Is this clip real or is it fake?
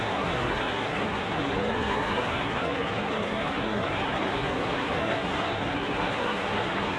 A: fake